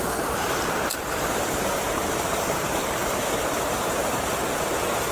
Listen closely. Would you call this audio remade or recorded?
remade